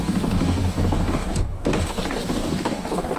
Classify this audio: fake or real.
fake